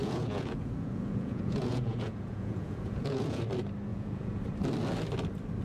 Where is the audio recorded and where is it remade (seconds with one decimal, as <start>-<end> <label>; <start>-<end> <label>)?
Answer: 0.0-3.4 remade; 3.4-3.9 recorded; 3.9-4.4 remade; 4.4-5.6 recorded